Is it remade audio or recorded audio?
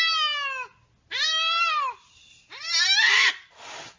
recorded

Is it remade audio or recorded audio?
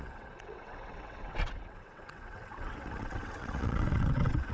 remade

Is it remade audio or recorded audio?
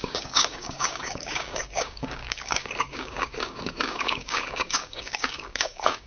remade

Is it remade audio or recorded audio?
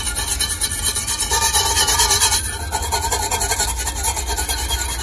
recorded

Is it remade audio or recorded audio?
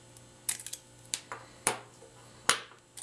recorded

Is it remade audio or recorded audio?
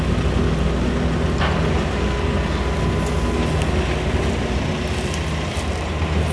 recorded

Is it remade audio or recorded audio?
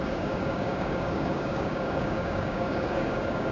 remade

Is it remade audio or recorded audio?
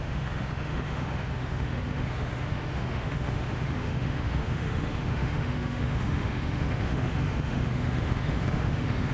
remade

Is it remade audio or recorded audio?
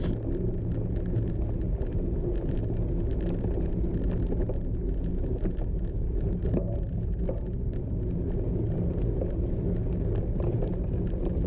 recorded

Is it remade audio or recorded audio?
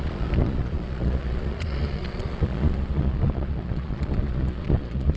remade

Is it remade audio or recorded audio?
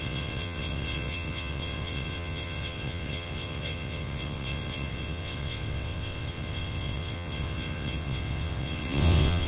remade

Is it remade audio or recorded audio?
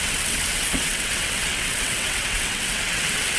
remade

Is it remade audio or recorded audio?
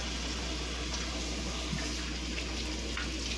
recorded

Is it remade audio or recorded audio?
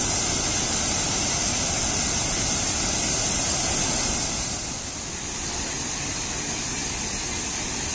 recorded